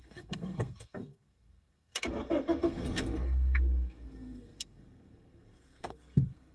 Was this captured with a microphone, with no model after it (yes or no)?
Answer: no